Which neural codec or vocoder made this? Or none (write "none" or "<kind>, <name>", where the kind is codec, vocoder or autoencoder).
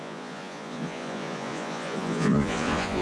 vocoder, Vocos